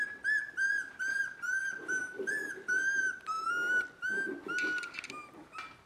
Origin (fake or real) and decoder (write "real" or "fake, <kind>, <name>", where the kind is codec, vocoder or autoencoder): real